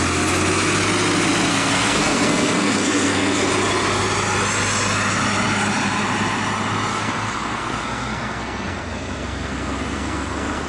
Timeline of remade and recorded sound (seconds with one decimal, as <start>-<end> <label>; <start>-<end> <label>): 0.0-1.5 recorded; 1.5-3.5 remade; 3.5-6.9 recorded; 6.9-10.7 remade